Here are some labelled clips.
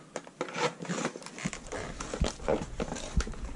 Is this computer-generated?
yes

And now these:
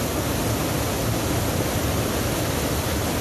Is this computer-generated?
no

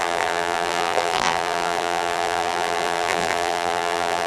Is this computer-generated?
yes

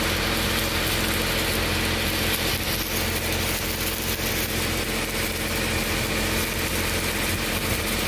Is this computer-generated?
no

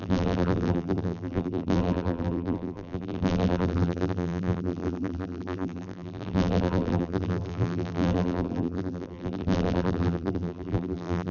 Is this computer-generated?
yes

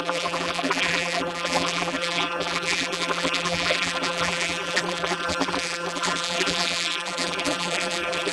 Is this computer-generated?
yes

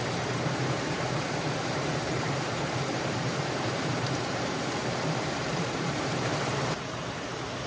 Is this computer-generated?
yes